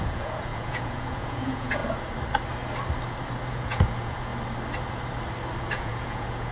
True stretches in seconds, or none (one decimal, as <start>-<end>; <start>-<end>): 1.8-3.5; 4.3-5.6